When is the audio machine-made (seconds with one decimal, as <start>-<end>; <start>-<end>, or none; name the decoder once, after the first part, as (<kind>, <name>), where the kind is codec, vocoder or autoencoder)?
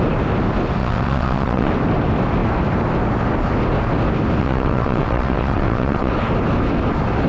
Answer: 0.8-1.7 (vocoder, WaveNeXt); 4.4-6.1